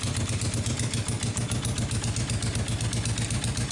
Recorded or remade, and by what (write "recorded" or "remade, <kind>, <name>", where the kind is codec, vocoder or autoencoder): recorded